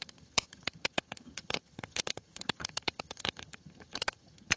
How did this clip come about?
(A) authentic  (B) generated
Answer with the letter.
B